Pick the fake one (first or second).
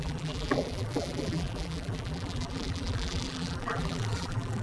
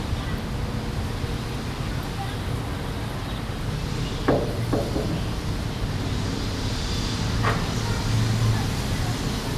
first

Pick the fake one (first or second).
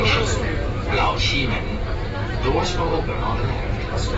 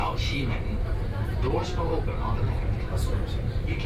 second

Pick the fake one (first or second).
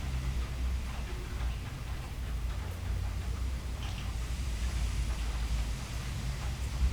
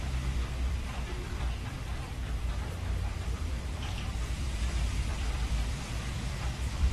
second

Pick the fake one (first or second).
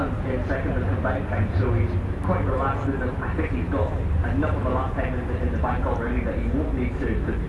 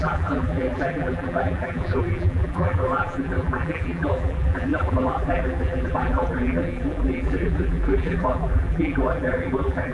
second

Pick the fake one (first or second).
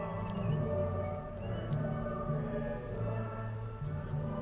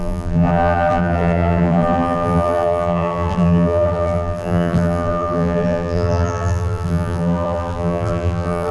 second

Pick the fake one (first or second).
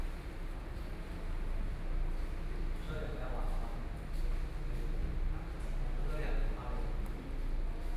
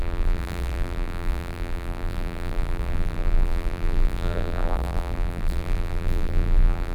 second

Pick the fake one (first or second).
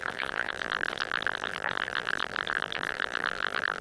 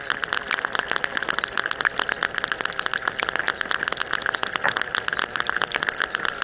first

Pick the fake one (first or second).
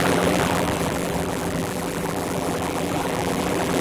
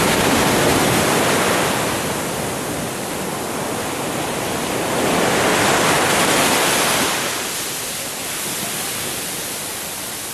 first